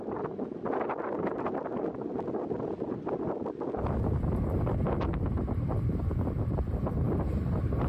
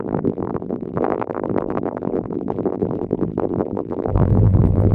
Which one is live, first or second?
first